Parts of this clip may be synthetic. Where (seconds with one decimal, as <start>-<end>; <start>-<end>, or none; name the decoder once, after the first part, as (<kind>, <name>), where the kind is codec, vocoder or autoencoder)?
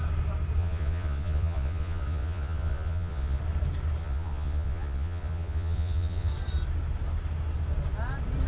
0.6-3.4 (vocoder, Vocos); 4.0-6.3